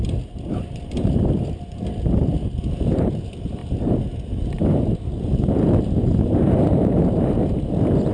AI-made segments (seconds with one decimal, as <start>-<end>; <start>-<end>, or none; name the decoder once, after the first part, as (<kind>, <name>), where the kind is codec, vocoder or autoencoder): none